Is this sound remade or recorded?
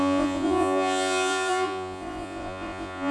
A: remade